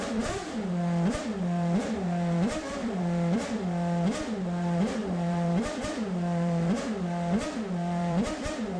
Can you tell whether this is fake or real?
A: fake